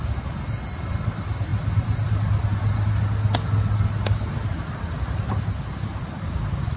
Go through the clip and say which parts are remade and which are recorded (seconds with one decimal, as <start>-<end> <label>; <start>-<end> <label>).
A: 0.0-6.8 recorded